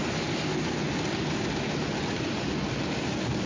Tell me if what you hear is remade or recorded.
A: recorded